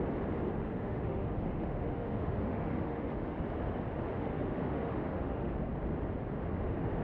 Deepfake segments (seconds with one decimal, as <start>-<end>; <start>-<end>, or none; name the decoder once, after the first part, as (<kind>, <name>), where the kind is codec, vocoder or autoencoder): 0.6-3.4 (autoencoder, DAC-VAE); 4.1-5.5